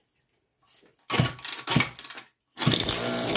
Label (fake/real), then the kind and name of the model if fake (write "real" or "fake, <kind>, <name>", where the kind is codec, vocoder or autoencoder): real